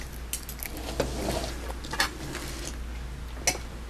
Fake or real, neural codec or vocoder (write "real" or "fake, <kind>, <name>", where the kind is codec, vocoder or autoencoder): real